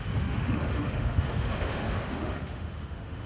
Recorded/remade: remade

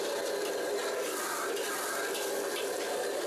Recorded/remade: recorded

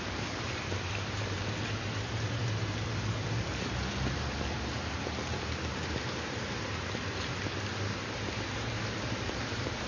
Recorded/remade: remade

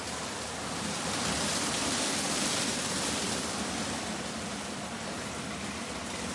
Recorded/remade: recorded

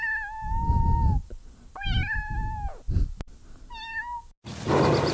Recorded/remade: recorded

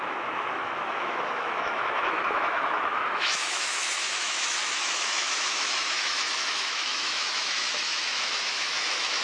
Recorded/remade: remade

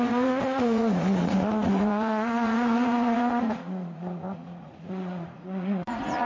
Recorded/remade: remade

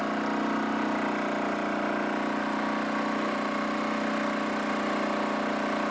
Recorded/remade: recorded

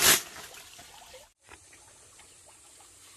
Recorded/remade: recorded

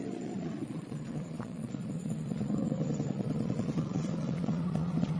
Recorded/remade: remade